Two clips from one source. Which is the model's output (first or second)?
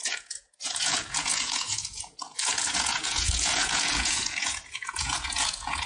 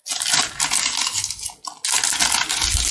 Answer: first